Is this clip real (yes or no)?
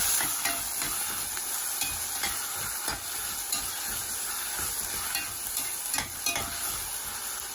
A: yes